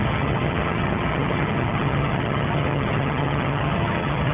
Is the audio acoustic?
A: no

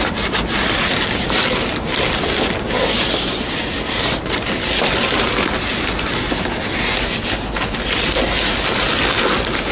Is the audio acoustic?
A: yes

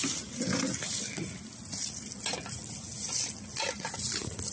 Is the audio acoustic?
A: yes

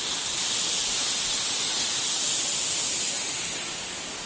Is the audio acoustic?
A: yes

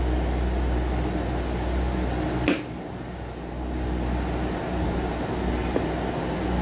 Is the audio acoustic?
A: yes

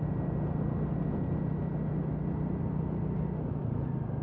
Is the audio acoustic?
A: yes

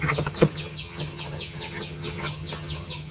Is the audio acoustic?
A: no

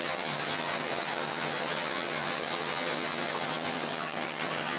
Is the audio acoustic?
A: no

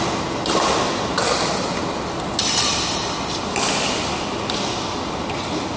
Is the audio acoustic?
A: yes